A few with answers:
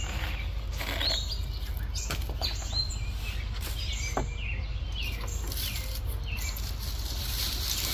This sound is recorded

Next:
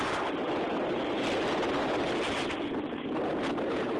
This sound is recorded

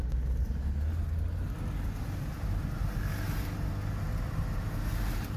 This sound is recorded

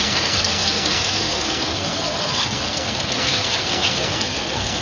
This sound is remade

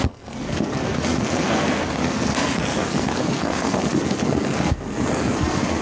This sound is remade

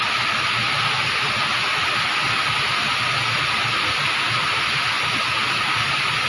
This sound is recorded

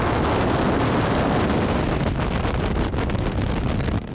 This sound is recorded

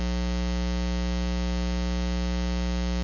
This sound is recorded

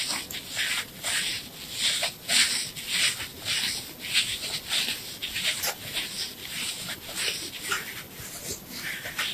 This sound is recorded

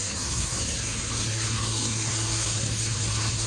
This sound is remade